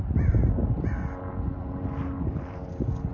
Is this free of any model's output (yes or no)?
yes